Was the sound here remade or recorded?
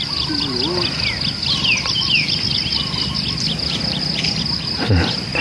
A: recorded